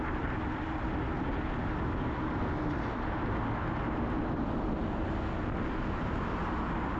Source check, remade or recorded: recorded